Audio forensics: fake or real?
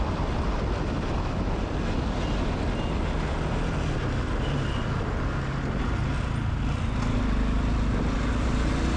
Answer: real